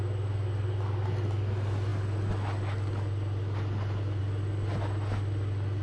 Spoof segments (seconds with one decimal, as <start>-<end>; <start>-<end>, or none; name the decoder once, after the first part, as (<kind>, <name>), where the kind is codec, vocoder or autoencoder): none